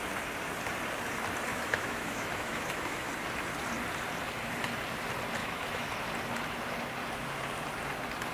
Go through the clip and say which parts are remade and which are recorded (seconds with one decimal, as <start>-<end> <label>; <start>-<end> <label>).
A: 0.0-1.5 recorded; 1.5-3.1 remade; 3.1-5.4 recorded; 5.4-5.9 remade; 5.9-8.3 recorded